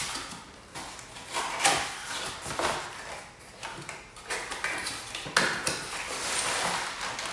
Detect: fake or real real